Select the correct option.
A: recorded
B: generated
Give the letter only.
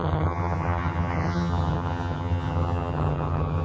B